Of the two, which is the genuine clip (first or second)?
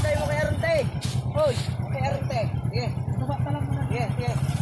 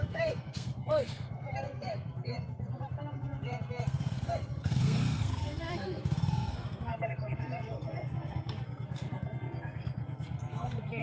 first